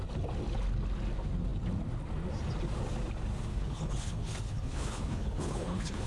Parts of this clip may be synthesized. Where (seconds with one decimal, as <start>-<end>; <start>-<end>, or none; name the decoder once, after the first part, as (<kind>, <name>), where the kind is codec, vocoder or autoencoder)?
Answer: 3.5-6.1 (codec, HILCodec)

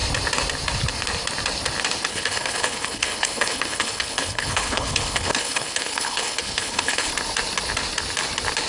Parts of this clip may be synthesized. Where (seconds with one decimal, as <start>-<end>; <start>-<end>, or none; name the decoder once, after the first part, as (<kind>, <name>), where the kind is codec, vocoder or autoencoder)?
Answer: 2.1-7.1 (codec, HILCodec)

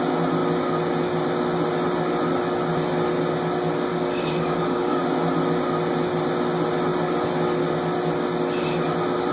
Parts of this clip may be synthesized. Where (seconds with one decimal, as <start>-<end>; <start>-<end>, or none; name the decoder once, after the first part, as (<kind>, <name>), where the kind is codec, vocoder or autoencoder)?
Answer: 3.9-5.0 (codec, DAC)

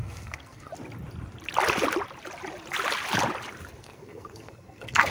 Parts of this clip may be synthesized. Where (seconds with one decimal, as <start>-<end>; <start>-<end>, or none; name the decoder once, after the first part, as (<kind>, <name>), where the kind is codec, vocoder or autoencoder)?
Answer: 0.0-0.7 (codec, SNAC); 3.8-5.1

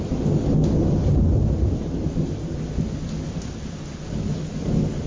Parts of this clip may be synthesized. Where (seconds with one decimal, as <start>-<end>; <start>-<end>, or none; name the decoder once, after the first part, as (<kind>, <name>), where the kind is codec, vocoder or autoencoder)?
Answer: none

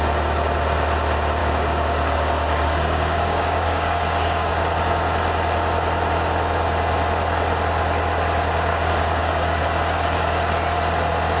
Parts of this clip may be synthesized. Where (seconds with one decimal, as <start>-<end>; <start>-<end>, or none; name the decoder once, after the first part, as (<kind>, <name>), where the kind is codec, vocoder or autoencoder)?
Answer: 1.4-4.5 (codec, DAC); 8.7-9.6